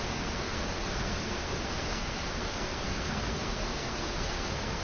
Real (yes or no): no